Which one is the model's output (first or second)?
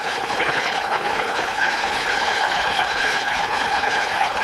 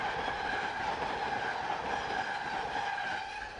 first